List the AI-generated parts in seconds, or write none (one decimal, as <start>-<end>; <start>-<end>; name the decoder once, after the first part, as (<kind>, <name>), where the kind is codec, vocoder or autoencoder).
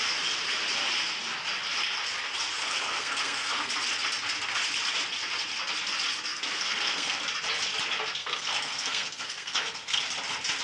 2.6-3.7 (codec, SNAC); 6.3-7.2; 8.2-10.0